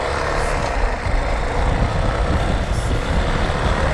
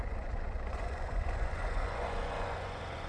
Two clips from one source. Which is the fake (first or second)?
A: second